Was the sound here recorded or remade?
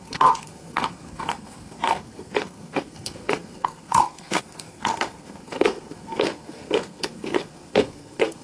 remade